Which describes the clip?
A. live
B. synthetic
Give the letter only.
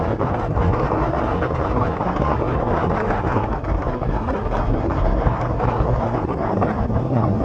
B